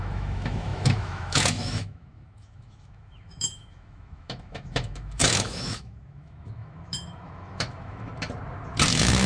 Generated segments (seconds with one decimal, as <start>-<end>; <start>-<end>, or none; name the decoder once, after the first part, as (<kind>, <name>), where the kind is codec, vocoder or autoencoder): 0.0-8.1 (autoencoder, DAC-VAE); 8.9-9.3